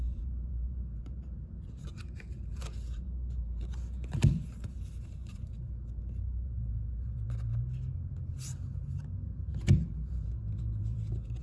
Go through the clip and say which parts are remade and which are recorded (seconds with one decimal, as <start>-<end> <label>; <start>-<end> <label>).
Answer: 0.0-11.4 remade